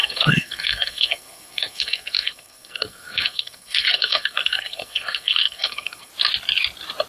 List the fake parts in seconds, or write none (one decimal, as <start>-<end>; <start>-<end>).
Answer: 0.0-6.1